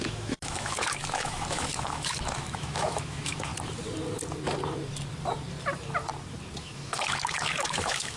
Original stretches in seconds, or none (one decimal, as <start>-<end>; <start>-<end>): 3.5-6.6